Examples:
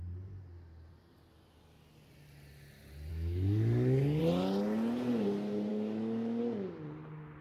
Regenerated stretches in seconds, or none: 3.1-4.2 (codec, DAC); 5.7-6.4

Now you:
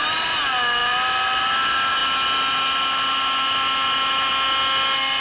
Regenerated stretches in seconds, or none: none

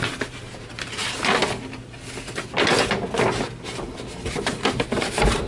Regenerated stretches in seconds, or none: 0.0-1.0 (vocoder, BigVGAN v2); 4.3-5.5

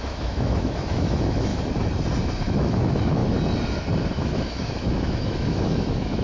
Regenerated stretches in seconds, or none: 0.0-1.5 (autoencoder, DAC-VAE); 2.4-3.2; 4.1-6.2